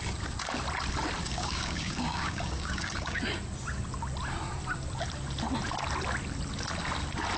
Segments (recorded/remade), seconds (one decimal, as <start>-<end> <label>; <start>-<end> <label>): 0.0-1.2 recorded; 1.2-3.2 remade; 3.2-7.4 recorded